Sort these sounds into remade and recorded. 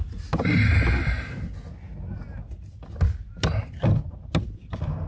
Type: recorded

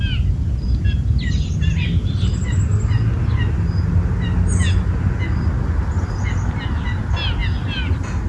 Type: recorded